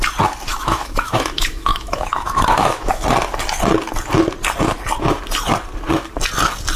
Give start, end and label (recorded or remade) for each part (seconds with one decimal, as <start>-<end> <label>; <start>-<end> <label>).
0.0-0.5 recorded; 0.5-3.0 remade; 3.0-6.8 recorded